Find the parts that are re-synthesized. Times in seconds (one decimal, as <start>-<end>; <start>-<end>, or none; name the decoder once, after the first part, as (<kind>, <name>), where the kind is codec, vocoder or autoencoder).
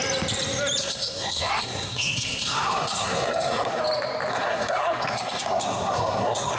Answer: 0.8-3.8 (codec, SNAC); 4.3-6.6